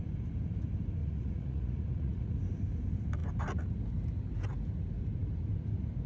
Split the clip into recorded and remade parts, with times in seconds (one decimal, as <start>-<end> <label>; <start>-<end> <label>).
0.0-1.0 recorded; 1.0-2.3 remade; 2.3-6.1 recorded